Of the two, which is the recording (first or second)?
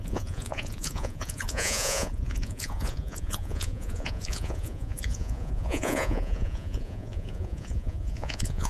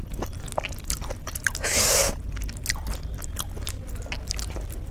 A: second